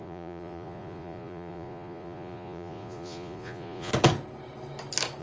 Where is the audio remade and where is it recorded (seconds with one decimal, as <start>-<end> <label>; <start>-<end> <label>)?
0.0-3.9 remade; 3.9-5.2 recorded